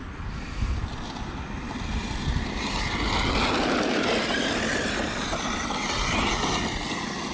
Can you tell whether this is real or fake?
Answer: real